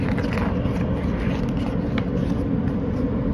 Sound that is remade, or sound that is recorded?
recorded